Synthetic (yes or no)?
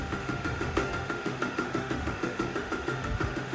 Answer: yes